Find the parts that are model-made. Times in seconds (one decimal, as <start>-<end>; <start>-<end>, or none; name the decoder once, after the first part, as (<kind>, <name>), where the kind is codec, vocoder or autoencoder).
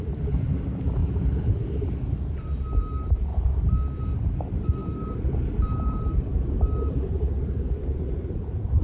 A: 0.0-1.0 (vocoder, BigVGAN v2); 2.2-3.3; 4.0-6.3; 7.4-8.8